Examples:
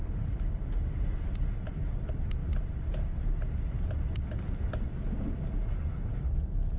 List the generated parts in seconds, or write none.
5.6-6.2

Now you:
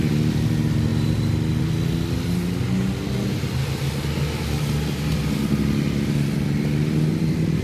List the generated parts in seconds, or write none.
none

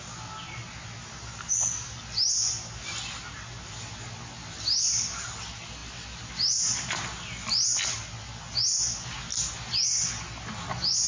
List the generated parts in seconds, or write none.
none

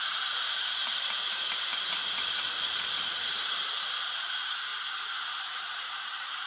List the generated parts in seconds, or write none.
0.0-1.7; 3.2-4.7; 5.4-6.5

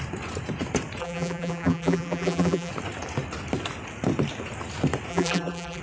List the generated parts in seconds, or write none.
1.0-2.7; 5.1-5.8